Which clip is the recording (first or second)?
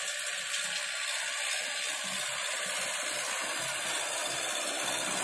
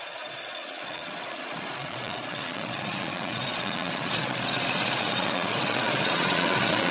first